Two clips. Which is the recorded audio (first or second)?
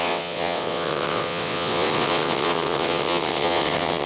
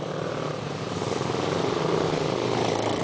second